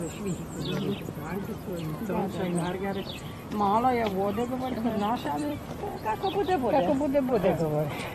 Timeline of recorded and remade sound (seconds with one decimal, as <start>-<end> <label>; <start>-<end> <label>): 0.0-2.2 recorded; 2.2-3.2 remade; 3.2-4.1 recorded; 4.1-6.7 remade; 6.7-7.3 recorded; 7.3-8.1 remade